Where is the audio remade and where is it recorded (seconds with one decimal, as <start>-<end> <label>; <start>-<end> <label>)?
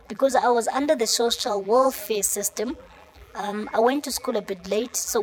0.0-5.2 remade